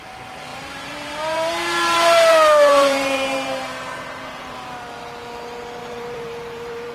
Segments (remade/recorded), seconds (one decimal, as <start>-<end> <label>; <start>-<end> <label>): 0.0-0.5 recorded; 0.5-4.6 remade; 4.6-5.8 recorded; 5.8-6.9 remade